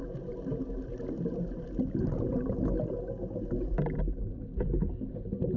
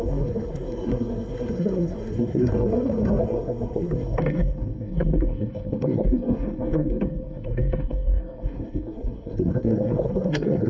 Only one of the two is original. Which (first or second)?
first